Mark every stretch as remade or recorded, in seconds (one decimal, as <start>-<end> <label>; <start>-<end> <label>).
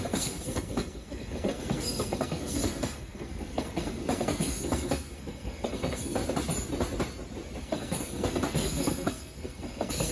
0.0-6.2 remade; 6.2-7.6 recorded; 7.6-10.1 remade